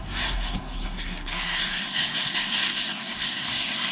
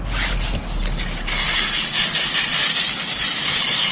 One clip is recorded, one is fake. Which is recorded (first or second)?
second